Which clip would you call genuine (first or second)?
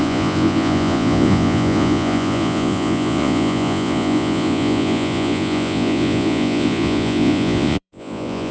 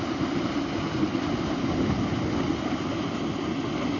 second